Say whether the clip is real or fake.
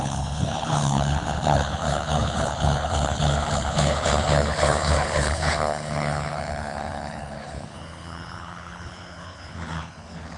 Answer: fake